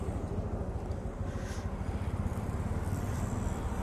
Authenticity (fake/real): real